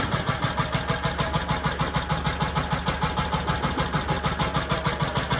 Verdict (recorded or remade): recorded